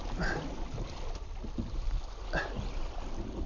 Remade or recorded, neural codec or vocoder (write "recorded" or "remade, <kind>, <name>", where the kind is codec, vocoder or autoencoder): recorded